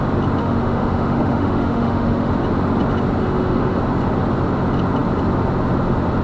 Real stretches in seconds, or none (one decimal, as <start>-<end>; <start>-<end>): 0.0-0.4; 2.3-3.2; 3.8-6.2